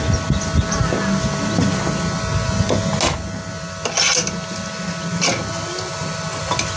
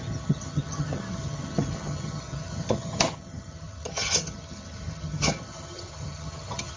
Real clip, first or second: first